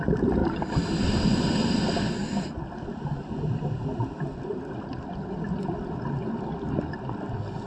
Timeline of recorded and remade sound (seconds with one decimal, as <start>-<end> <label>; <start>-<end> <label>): 0.0-7.7 recorded